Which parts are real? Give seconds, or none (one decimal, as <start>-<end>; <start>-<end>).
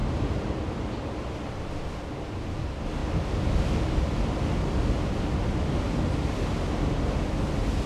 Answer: 0.0-7.9